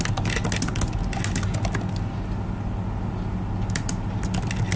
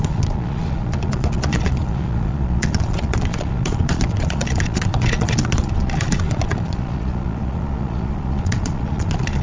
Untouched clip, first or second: first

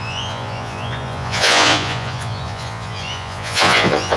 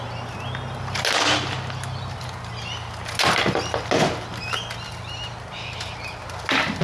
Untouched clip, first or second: second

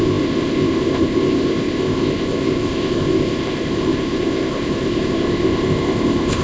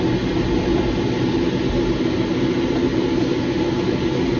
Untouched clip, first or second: second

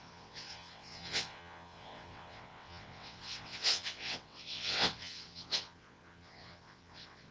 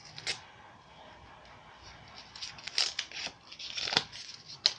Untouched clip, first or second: second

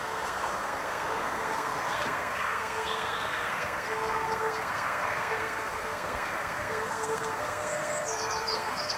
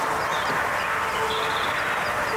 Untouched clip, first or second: second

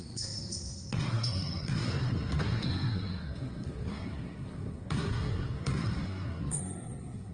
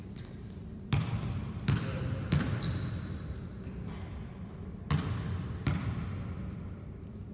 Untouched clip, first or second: second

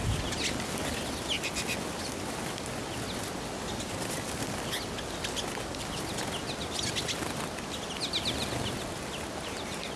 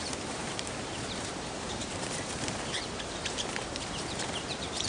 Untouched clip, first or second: first